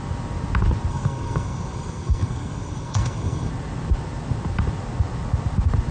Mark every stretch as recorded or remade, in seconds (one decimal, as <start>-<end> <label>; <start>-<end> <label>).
0.0-0.9 recorded; 0.9-3.5 remade; 3.5-5.9 recorded